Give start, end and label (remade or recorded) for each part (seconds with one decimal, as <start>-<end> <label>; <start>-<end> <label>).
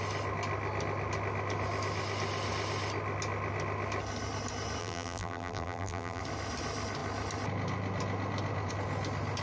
0.0-4.8 recorded; 4.8-6.2 remade; 6.2-9.4 recorded